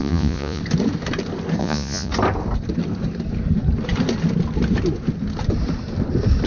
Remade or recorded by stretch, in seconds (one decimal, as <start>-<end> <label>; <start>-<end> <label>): 0.0-0.6 remade; 0.6-1.6 recorded; 1.6-2.1 remade; 2.1-6.5 recorded

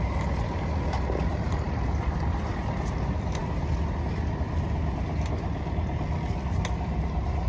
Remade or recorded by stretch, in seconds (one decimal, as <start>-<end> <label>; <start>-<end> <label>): 0.0-1.3 recorded; 1.3-2.5 remade; 2.5-7.5 recorded

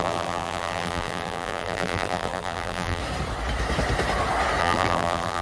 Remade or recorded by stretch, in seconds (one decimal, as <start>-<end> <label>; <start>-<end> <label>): 0.0-3.0 remade; 3.0-4.6 recorded; 4.6-5.4 remade

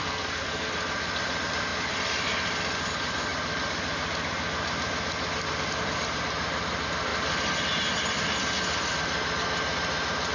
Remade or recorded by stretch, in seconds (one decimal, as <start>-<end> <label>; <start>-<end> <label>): 0.0-0.7 remade; 0.7-10.3 recorded